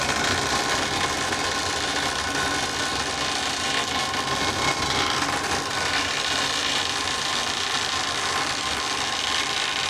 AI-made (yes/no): no